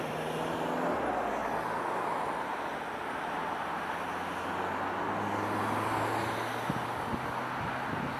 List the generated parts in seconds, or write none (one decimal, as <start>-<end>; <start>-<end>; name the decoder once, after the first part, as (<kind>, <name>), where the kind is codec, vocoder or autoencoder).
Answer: none